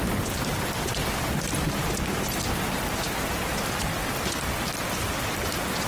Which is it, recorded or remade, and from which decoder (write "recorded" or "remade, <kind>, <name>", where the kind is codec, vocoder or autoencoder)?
recorded